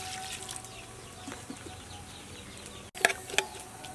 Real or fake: real